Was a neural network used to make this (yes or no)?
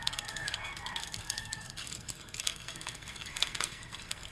yes